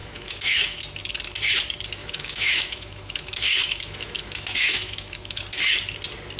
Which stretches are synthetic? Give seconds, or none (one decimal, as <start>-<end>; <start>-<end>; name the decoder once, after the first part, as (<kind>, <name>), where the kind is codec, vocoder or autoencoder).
0.0-0.8 (autoencoder, DAC-VAE); 2.0-5.4